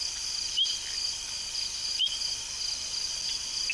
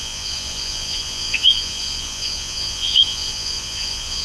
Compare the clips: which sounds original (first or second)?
first